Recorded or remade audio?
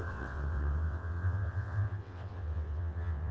remade